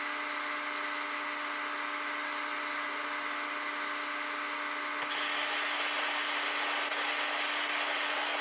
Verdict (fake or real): real